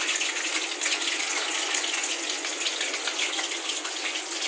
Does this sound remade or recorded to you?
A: remade